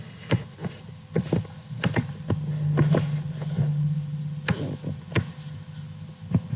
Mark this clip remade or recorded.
recorded